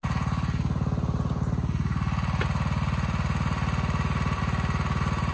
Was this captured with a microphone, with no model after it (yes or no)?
yes